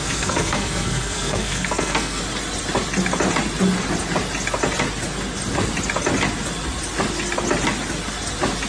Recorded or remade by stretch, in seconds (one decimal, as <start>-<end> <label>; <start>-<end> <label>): 0.0-2.2 remade; 2.2-8.7 recorded